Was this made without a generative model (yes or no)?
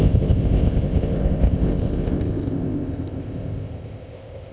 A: no